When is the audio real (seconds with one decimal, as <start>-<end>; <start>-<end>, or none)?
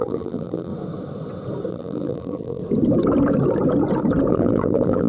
0.7-1.7; 2.6-4.3